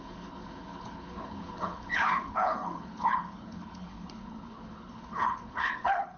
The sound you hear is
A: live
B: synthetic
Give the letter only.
B